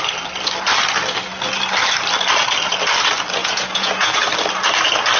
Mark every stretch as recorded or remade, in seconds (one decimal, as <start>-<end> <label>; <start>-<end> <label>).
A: 0.0-3.4 recorded; 3.4-4.3 remade; 4.3-5.2 recorded